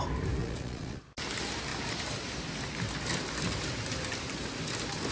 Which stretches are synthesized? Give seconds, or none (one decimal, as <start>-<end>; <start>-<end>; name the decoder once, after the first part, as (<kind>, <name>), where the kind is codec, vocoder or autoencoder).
0.4-1.0 (vocoder, Vocos)